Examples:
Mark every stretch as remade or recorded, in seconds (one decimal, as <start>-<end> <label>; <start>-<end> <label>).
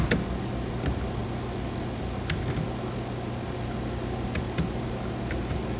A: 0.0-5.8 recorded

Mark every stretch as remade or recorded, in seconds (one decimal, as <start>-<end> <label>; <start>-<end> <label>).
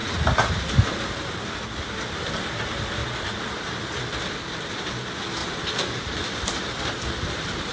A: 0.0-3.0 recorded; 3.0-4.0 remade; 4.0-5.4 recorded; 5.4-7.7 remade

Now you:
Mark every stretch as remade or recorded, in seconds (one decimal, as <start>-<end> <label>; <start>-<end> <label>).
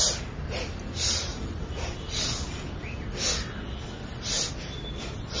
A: 0.0-1.3 recorded; 1.3-2.2 remade; 2.2-5.4 recorded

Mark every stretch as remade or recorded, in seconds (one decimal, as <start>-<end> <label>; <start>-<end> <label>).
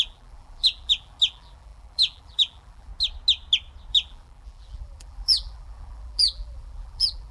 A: 0.0-2.9 remade; 2.9-3.9 recorded; 3.9-7.3 remade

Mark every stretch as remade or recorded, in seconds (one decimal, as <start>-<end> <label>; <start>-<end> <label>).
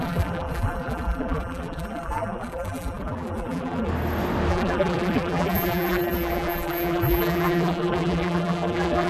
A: 0.0-3.9 remade; 3.9-4.5 recorded; 4.5-9.1 remade